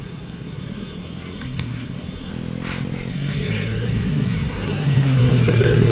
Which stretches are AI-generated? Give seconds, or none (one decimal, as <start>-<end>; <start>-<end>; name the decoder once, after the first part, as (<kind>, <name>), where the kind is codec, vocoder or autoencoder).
0.0-2.3 (codec, SNAC); 3.1-5.9